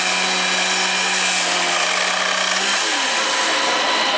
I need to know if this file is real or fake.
real